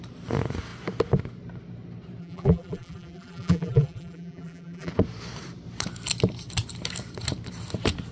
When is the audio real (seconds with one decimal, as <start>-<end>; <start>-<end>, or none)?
0.0-2.2; 4.9-8.1